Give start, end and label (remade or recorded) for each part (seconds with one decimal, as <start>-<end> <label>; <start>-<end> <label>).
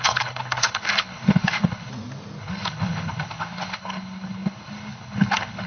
0.0-1.9 remade; 1.9-2.4 recorded; 2.4-5.7 remade